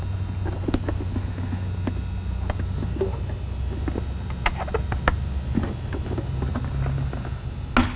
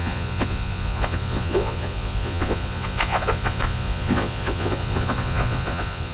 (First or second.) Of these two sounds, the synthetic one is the second